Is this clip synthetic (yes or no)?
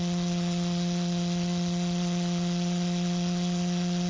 no